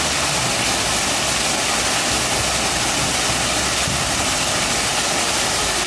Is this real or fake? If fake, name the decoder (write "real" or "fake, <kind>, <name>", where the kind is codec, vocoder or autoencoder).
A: real